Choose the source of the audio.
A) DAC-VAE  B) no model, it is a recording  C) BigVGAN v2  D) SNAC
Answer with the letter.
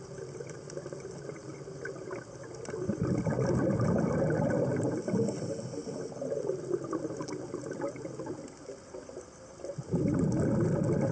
B